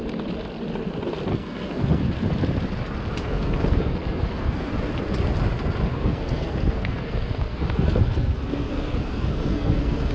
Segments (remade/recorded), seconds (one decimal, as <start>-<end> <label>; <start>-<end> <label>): 0.0-1.3 recorded; 1.3-2.1 remade; 2.1-3.2 recorded; 3.2-4.7 remade; 4.7-5.9 recorded; 5.9-10.1 remade

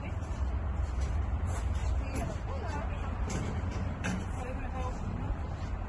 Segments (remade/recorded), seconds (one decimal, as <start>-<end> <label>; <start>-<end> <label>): 0.0-1.8 remade; 1.8-3.7 recorded; 3.7-5.9 remade

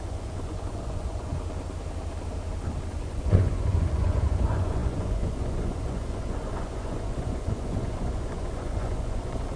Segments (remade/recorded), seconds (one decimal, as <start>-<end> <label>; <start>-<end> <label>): 0.0-1.3 remade; 1.3-2.9 recorded; 2.9-9.6 remade

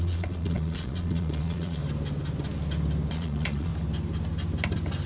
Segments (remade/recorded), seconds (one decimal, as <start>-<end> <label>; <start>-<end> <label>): 0.0-1.8 remade; 1.8-3.1 recorded; 3.1-3.7 remade; 3.7-5.1 recorded

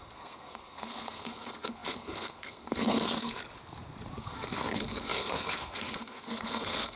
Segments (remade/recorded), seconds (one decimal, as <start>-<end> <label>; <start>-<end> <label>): 0.0-3.4 remade; 3.4-4.2 recorded; 4.2-7.0 remade